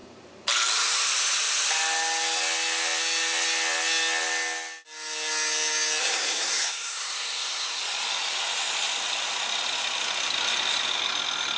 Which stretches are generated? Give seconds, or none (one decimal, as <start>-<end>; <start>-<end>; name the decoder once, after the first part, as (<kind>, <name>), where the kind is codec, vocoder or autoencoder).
6.0-7.8 (codec, SNAC)